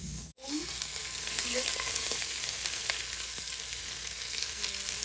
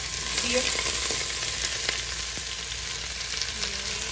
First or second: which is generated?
first